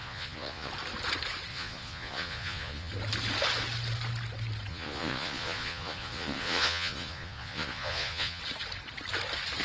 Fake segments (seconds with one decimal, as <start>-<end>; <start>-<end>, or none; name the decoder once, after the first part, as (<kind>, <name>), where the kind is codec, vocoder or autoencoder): 0.0-0.7 (vocoder, Vocos); 1.5-2.9; 4.7-8.4